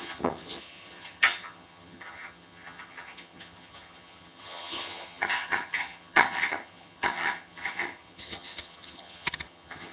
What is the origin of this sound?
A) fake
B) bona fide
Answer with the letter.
A